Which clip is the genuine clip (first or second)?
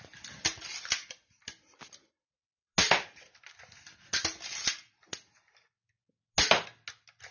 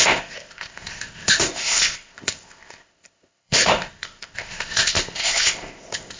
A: first